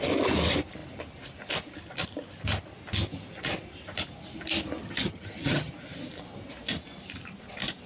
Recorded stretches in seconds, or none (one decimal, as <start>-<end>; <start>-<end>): 0.0-4.8; 5.7-7.9